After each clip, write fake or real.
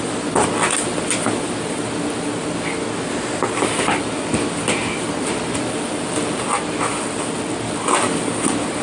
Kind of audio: real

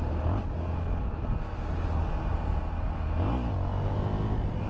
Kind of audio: real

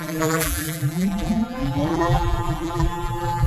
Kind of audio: fake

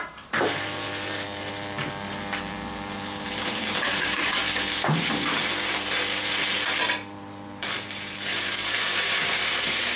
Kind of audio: fake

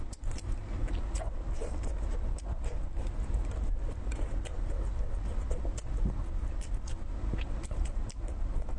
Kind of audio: real